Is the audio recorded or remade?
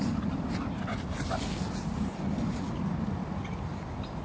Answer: recorded